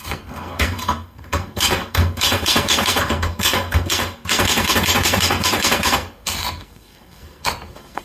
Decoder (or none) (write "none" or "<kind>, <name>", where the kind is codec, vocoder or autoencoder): codec, SNAC